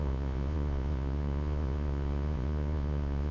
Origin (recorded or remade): remade